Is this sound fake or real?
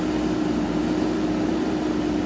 real